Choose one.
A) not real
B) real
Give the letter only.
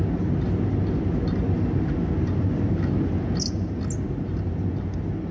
B